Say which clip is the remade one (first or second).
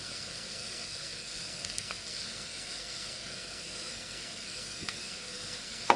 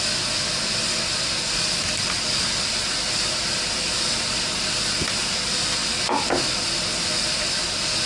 first